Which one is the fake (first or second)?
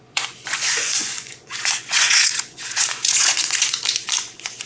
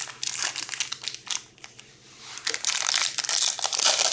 first